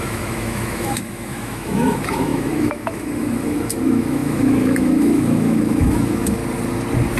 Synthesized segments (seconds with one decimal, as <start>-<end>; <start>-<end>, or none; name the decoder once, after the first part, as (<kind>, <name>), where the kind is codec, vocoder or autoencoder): 0.0-6.4 (autoencoder, DAC-VAE)